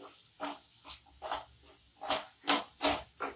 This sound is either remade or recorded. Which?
recorded